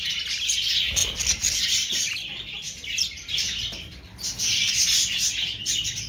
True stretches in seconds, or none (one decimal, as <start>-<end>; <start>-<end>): 0.0-6.1